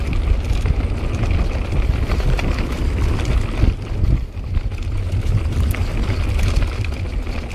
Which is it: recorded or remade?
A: recorded